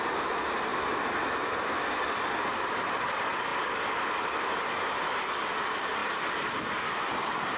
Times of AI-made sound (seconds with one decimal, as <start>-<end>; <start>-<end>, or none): 6.0-7.6